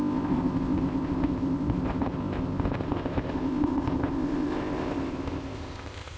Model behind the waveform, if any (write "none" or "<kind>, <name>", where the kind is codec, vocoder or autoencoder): codec, ZipCodec